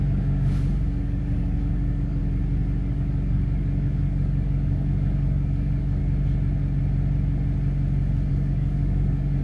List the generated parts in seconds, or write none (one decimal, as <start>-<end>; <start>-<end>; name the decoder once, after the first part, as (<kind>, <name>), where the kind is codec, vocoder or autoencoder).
0.0-2.2 (codec, DAC); 2.9-6.0; 8.3-9.4